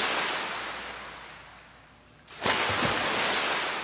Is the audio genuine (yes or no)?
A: yes